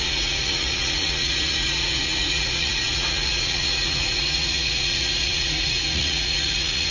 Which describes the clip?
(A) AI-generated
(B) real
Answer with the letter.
A